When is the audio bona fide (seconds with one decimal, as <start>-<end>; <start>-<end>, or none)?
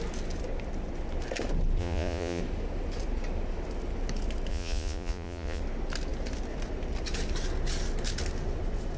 0.0-1.8; 2.4-4.5; 5.6-9.0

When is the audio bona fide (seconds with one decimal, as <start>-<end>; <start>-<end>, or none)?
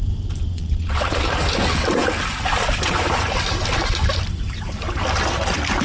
0.0-0.5; 1.2-5.8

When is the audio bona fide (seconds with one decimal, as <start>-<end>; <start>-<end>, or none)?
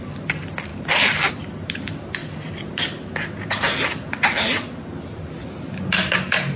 0.0-6.6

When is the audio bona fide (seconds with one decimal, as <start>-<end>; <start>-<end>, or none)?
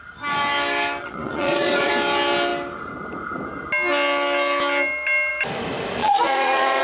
0.0-1.0; 1.9-6.0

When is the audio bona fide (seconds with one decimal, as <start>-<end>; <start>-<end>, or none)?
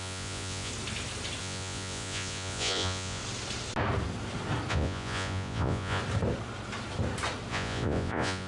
0.7-1.4; 3.2-4.7; 6.0-7.5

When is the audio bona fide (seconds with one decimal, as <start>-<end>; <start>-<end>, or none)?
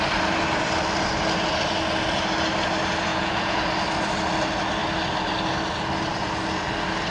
0.0-3.1; 3.6-7.1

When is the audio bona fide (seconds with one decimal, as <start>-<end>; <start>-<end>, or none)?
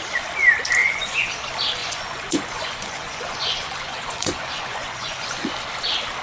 0.0-0.8; 1.3-1.8; 5.5-6.2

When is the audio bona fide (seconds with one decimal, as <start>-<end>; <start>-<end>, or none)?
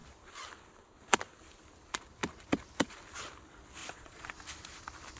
0.0-3.8; 4.3-5.2